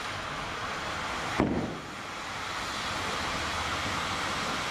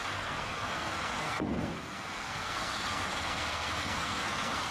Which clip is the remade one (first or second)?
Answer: second